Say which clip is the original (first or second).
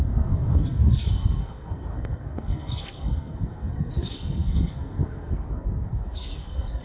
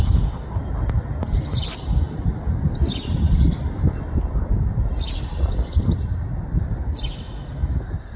second